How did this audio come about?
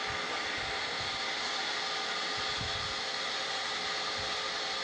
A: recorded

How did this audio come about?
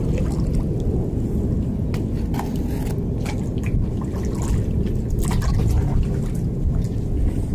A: recorded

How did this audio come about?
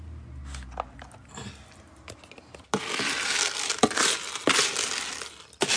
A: recorded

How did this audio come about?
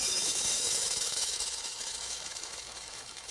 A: remade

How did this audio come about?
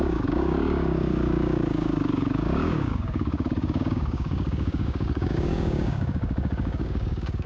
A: remade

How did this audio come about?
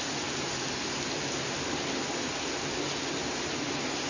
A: recorded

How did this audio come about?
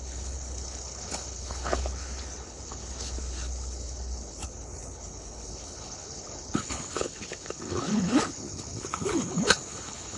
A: remade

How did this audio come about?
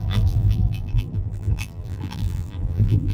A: remade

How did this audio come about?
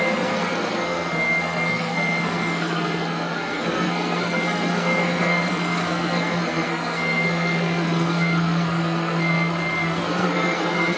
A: remade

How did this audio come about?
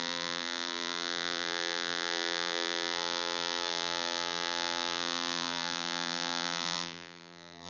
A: remade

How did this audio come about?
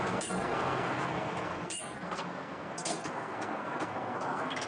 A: remade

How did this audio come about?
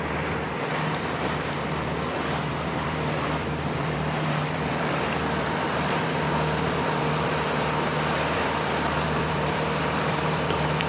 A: remade